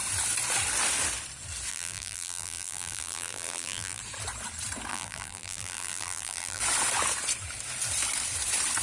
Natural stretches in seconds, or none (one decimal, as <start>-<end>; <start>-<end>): 0.0-1.7; 4.0-4.9; 6.6-8.8